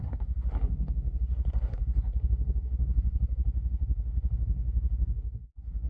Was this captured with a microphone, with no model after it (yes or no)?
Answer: no